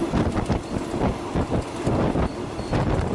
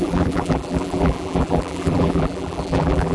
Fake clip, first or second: second